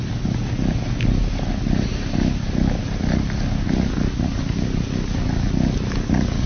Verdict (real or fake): real